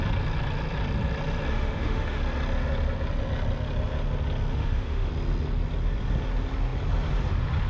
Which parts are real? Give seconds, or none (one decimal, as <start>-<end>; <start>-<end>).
0.0-1.5; 2.2-4.5; 5.1-7.7